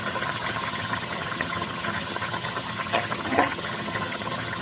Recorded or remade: remade